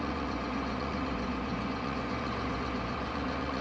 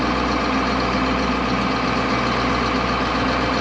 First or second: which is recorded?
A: second